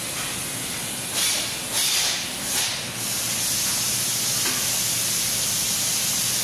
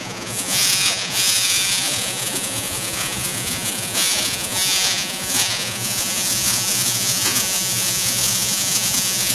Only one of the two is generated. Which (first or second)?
second